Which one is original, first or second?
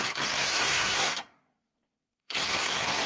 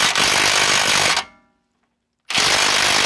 second